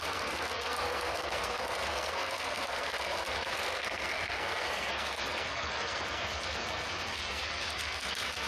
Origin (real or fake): fake